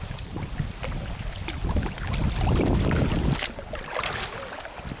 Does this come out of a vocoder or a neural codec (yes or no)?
yes